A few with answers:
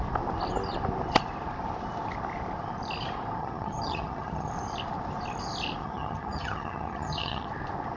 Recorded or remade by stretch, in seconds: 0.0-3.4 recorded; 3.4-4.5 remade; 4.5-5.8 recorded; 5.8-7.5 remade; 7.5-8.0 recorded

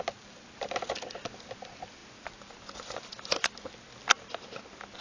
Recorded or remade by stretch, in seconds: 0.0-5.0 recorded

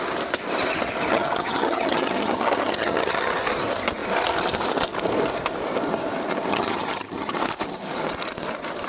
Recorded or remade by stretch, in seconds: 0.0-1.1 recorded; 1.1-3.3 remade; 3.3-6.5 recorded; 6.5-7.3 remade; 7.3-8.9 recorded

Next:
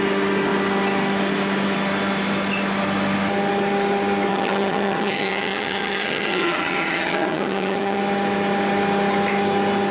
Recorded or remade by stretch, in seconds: 0.0-4.3 recorded; 4.3-8.0 remade; 8.0-9.9 recorded

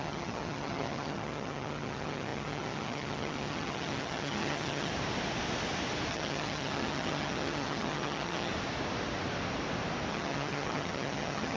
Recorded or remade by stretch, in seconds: 0.0-4.9 remade; 4.9-6.1 recorded; 6.1-8.5 remade; 8.5-10.1 recorded; 10.1-11.6 remade